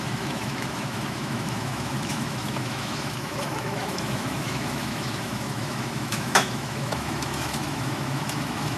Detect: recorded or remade remade